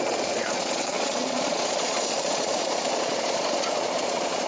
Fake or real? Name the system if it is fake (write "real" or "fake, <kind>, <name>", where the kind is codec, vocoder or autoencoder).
fake, vocoder, Vocos